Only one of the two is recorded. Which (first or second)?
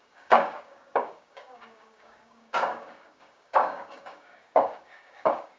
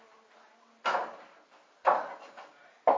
second